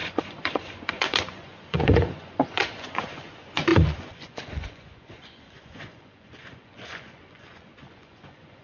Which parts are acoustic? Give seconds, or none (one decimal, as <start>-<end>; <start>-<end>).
none